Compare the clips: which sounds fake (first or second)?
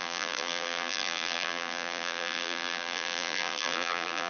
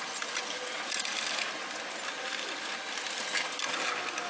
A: first